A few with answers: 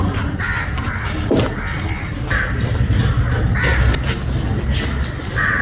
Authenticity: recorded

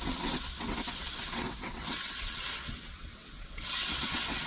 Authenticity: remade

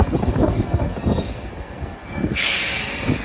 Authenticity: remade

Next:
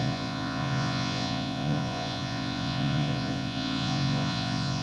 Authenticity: remade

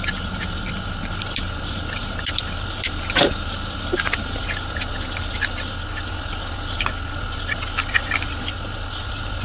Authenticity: recorded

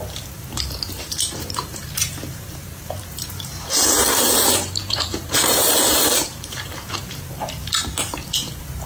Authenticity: remade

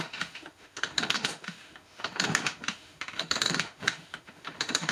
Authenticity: remade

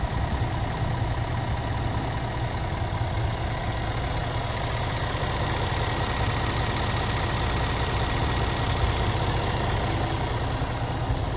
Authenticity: recorded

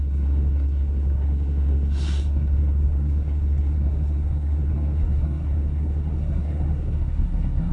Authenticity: remade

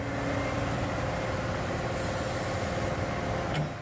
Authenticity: recorded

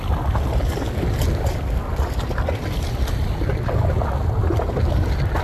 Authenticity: recorded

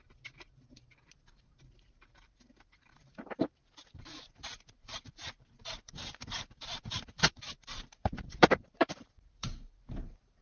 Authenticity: remade